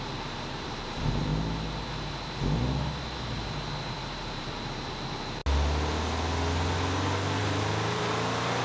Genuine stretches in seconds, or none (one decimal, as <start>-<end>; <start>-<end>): 1.3-4.3; 5.4-7.4